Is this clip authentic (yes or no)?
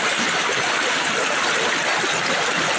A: yes